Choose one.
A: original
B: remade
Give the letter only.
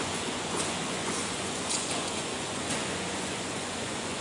B